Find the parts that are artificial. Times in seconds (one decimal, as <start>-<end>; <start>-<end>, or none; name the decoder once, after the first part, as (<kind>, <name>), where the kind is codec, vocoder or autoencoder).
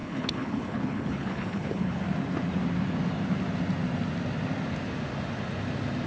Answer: 0.0-2.0 (codec, HILCodec)